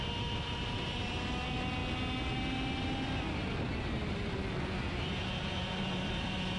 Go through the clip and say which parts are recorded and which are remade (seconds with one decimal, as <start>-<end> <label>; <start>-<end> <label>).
0.0-6.6 recorded